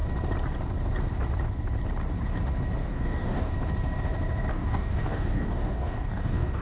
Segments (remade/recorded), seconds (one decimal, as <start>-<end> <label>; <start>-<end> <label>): 0.0-2.8 recorded; 2.8-3.5 remade; 3.5-4.5 recorded; 4.5-6.6 remade